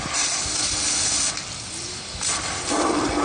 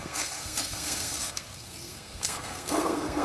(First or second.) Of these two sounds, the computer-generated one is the second